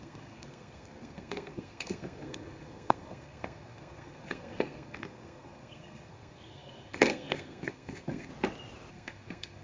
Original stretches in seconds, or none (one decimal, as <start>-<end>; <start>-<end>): 8.3-8.9

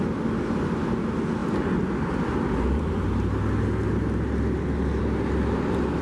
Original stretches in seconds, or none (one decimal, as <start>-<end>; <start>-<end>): 0.0-6.0

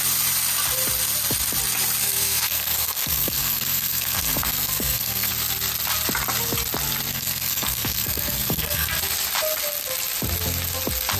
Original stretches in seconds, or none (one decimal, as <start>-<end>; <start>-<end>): 0.0-2.0; 5.3-7.1; 8.9-11.2

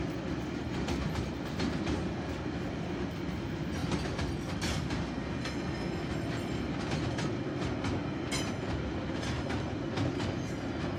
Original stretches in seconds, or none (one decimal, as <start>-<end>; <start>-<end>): 0.0-11.0

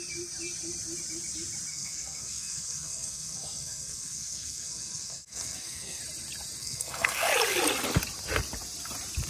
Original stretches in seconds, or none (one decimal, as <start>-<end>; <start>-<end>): 0.0-1.7; 6.0-6.6; 7.3-9.3

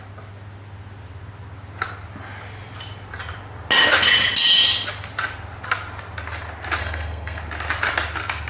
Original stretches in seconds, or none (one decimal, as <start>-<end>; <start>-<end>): 0.0-6.8; 7.4-8.5

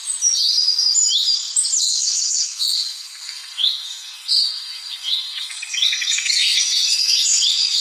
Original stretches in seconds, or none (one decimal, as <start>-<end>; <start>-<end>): 0.0-1.8

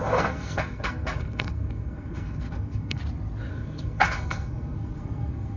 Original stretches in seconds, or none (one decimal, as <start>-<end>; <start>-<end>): 3.0-3.5